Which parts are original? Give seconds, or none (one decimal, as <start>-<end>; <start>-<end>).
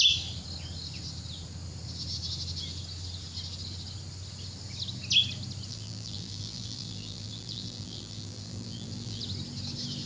0.0-5.7; 9.2-10.1